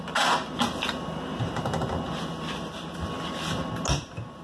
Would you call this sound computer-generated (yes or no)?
no